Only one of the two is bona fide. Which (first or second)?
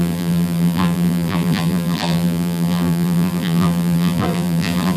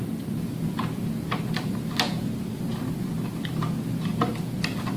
second